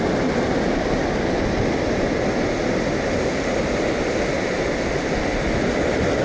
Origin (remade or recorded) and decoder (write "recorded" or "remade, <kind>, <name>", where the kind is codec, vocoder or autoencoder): recorded